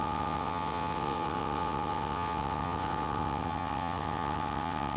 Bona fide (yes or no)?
no